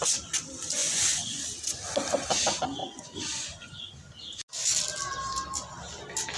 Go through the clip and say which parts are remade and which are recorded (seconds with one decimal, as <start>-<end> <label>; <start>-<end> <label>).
0.0-0.8 recorded; 0.8-1.4 remade; 1.4-2.8 recorded; 2.8-3.9 remade; 3.9-6.4 recorded

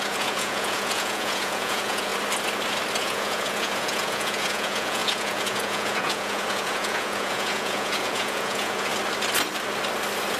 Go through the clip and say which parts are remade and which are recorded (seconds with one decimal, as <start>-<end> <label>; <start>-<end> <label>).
0.0-2.1 remade; 2.1-3.0 recorded; 3.0-8.9 remade; 8.9-10.4 recorded

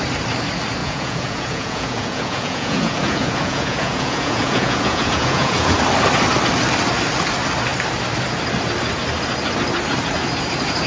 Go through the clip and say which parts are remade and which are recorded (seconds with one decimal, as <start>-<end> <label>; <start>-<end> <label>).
0.0-0.8 recorded; 0.8-5.8 remade; 5.8-10.9 recorded

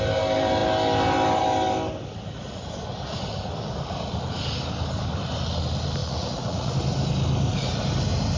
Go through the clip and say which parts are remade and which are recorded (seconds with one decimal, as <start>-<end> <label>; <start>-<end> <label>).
0.0-6.0 recorded; 6.0-6.7 remade; 6.7-8.4 recorded

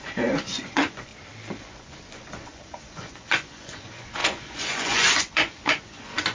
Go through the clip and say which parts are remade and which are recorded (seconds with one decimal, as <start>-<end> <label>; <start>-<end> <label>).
0.0-1.1 remade; 1.1-1.6 recorded; 1.6-6.3 remade